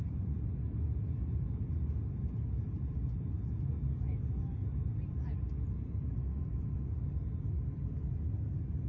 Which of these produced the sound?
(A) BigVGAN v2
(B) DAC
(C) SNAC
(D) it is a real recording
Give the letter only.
D